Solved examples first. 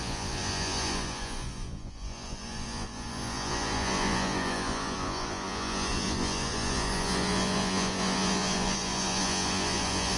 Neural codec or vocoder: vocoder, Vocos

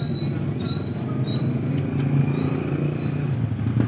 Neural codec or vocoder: none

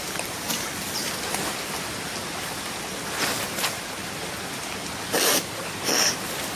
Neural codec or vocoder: none